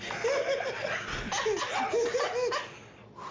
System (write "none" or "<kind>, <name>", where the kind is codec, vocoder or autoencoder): none